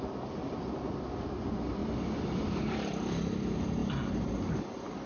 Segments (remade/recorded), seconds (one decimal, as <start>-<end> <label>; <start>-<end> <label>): 0.0-1.8 recorded; 1.8-3.0 remade; 3.0-5.1 recorded